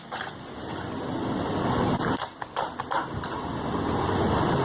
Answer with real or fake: real